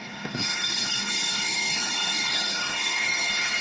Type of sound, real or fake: fake